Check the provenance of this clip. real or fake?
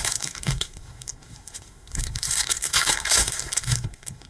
fake